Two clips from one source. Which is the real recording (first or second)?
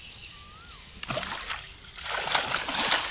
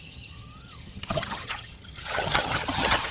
first